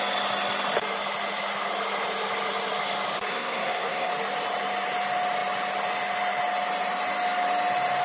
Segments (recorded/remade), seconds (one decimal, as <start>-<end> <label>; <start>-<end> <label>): 0.0-3.3 recorded; 3.3-4.1 remade; 4.1-8.0 recorded